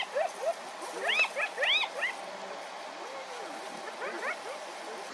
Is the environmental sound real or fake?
real